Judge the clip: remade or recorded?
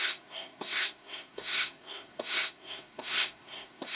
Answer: remade